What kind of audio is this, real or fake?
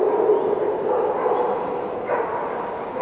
real